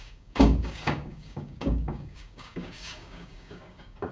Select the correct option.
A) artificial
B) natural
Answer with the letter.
A